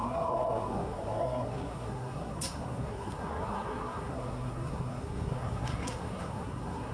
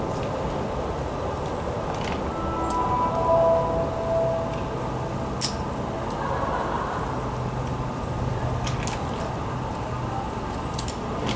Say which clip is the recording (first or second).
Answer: second